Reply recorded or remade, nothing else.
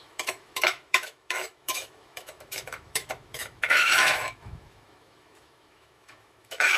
remade